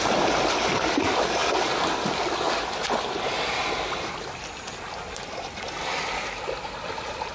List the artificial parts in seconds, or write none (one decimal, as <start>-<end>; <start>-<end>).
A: none